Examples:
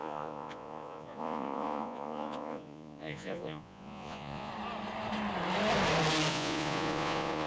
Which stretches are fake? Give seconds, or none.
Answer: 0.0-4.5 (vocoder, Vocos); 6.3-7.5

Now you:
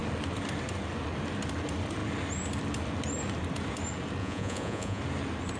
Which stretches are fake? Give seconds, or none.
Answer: 4.2-5.0 (vocoder, Vocos)

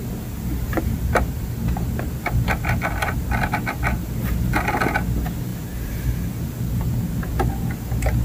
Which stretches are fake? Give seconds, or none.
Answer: none